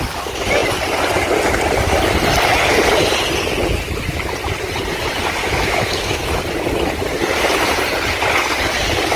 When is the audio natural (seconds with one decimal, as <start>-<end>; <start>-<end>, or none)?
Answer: 0.0-5.4; 6.4-9.2